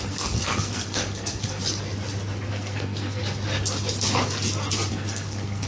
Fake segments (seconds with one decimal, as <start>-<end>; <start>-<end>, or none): 0.0-1.6; 2.5-3.2; 4.9-5.7